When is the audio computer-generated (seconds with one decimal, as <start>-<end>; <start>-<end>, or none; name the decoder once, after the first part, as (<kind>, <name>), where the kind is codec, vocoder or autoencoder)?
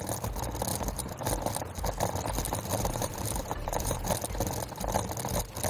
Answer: 0.7-1.3 (vocoder, BigVGAN v2); 2.7-4.1